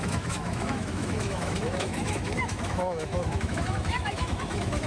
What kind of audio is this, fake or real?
fake